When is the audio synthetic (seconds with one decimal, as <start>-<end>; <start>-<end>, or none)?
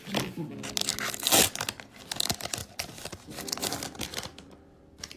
2.6-4.8